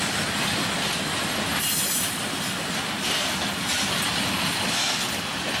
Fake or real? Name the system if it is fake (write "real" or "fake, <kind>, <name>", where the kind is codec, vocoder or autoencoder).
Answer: real